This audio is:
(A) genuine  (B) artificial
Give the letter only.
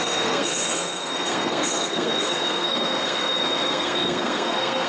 B